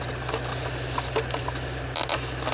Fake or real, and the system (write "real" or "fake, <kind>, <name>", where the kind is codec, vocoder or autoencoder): real